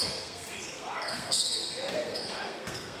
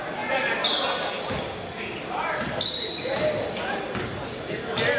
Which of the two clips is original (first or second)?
second